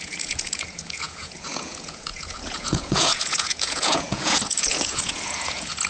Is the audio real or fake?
fake